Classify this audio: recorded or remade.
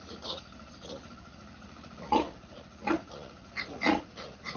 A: remade